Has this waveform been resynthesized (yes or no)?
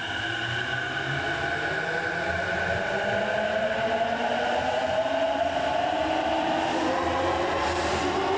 no